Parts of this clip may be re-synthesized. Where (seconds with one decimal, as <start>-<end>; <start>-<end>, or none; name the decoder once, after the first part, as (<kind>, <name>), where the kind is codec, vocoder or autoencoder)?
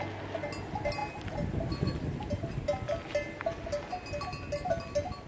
none